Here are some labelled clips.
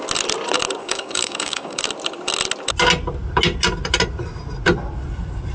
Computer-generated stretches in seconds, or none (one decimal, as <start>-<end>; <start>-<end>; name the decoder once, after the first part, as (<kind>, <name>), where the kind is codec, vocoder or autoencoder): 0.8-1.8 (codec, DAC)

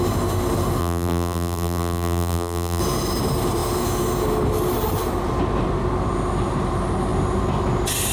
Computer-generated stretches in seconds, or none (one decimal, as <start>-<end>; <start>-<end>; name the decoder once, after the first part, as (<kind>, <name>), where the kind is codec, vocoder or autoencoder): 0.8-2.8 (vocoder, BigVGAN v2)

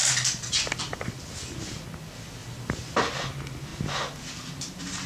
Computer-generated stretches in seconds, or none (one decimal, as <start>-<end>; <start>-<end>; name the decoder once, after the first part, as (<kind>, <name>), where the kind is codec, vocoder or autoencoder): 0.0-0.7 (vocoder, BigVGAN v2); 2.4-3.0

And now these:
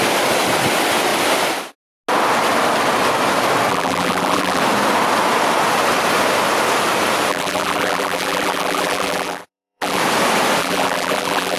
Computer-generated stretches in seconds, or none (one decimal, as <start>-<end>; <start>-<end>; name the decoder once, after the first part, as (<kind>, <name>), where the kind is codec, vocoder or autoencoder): 3.7-4.6 (vocoder, BigVGAN v2); 7.3-10.0; 10.6-11.6

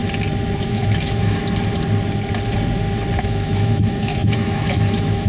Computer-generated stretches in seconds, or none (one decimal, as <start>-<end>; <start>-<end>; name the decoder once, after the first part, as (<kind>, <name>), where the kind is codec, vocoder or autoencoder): 0.7-1.4 (autoencoder, DAC-VAE); 3.2-5.3

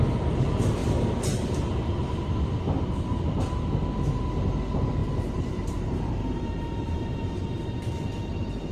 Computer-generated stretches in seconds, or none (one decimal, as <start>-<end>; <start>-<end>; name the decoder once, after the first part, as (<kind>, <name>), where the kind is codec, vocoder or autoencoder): 0.8-2.3 (vocoder, BigVGAN v2); 5.0-7.9

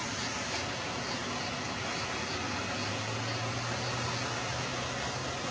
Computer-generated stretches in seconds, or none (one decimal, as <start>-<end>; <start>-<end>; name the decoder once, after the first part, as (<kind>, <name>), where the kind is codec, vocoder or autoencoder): none